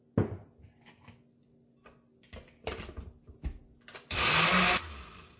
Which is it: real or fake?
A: real